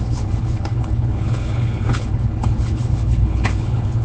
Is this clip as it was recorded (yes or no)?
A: no